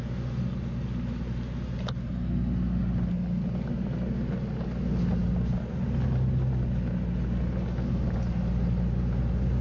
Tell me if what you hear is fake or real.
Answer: real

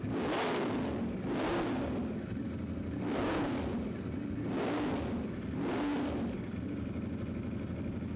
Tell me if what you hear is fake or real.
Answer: real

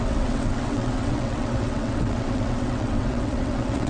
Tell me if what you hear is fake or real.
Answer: fake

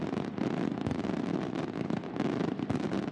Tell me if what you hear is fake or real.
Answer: real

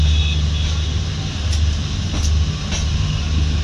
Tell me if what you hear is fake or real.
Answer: real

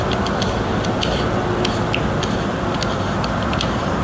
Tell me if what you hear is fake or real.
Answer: real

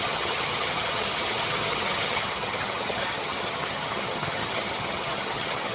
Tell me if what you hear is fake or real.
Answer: fake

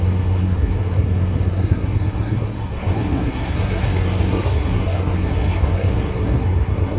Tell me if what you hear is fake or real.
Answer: fake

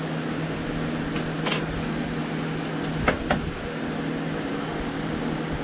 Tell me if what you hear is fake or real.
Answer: real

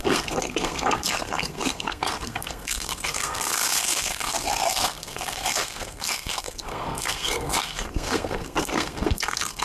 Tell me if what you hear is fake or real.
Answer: fake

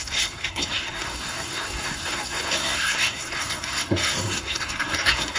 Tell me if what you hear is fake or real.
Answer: fake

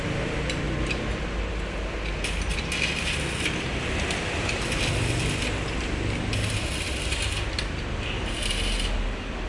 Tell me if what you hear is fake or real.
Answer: real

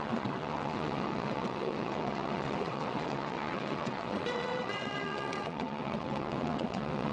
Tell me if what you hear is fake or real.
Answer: fake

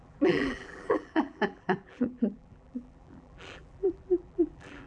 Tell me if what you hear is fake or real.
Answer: fake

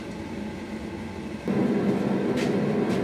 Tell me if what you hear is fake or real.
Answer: real